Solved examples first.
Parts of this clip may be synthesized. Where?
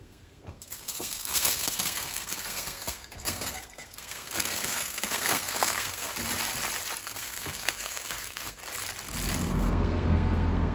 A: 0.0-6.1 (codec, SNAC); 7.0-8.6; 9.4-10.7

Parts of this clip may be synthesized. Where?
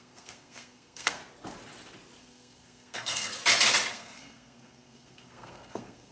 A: 0.0-1.2 (codec, SNAC); 2.2-3.3; 3.9-6.1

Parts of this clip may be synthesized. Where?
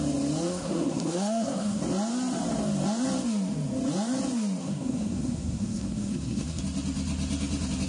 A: 0.5-1.8 (codec, SNAC); 4.6-6.6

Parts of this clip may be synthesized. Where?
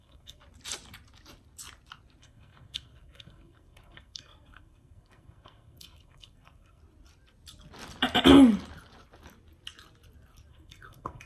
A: 0.0-0.4 (codec, SNAC); 2.2-6.8; 10.5-11.3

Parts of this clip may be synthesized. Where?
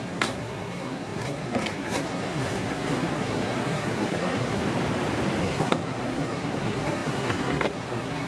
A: 0.0-4.6 (codec, SNAC); 5.4-8.3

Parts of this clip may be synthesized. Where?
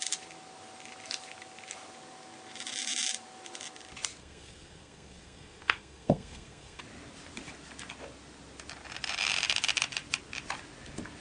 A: 4.2-6.8 (codec, SNAC)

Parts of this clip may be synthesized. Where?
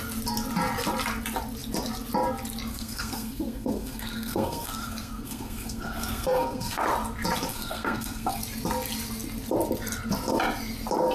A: 2.7-6.8 (codec, SNAC); 7.5-8.4